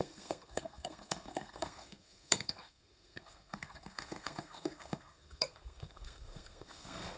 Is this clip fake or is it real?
fake